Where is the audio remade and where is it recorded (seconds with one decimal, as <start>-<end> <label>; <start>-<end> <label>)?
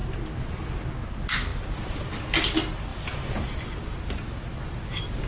0.0-5.3 recorded